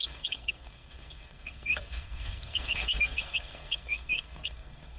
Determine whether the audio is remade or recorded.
remade